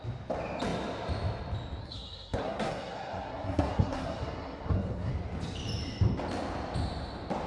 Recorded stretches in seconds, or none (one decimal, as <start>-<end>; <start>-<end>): 0.0-1.8; 5.1-7.5